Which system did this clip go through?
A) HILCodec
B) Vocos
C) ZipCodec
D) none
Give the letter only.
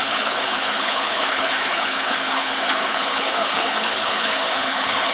A